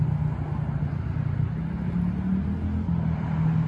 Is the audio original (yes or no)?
yes